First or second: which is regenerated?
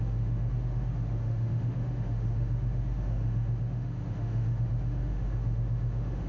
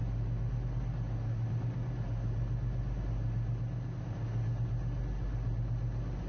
first